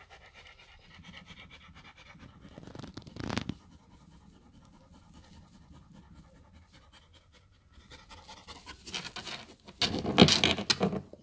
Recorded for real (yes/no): yes